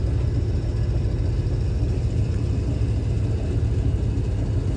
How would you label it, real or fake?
real